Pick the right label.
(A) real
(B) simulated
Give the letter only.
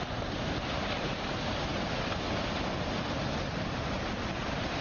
A